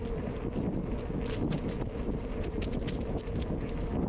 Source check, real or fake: real